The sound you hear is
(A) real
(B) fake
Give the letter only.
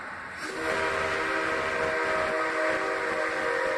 A